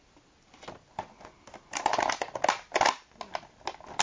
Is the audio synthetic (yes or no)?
no